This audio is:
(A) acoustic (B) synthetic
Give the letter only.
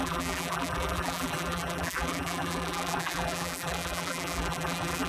B